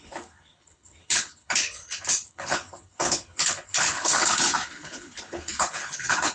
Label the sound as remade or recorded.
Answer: remade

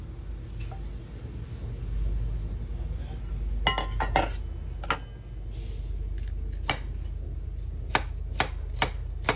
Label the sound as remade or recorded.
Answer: recorded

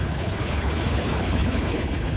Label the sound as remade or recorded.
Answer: remade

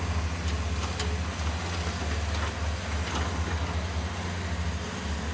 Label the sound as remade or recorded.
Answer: recorded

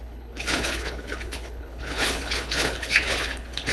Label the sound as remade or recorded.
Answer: remade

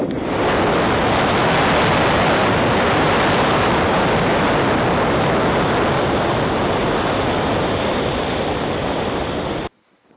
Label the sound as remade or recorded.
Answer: recorded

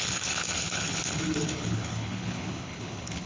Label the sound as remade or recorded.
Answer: remade